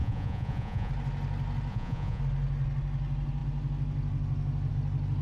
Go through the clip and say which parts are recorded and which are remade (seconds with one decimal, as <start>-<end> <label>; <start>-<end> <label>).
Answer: 0.0-0.9 remade; 0.9-1.7 recorded; 1.7-2.2 remade; 2.2-5.2 recorded